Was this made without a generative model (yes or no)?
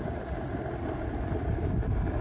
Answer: yes